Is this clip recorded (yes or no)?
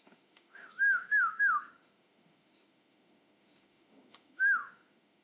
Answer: no